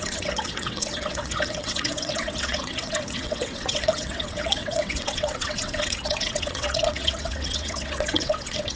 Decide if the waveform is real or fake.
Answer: fake